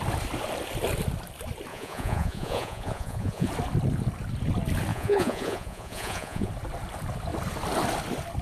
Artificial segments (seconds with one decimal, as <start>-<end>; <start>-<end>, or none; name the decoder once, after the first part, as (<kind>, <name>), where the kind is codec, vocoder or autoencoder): 1.7-3.5 (vocoder, Vocos); 4.9-6.5